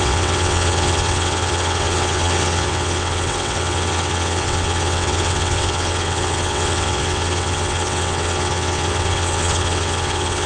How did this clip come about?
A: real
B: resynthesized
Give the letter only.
B